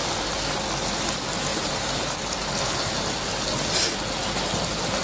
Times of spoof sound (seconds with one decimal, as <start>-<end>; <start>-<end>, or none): 1.5-2.0